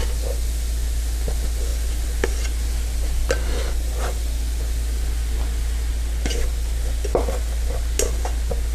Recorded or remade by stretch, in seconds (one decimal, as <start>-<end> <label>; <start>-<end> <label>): 0.0-8.7 recorded